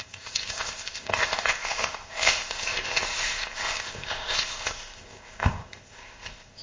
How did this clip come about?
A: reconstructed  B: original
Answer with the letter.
A